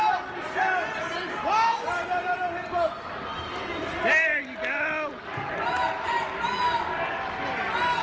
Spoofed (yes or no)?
no